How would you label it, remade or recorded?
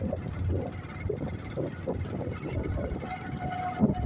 recorded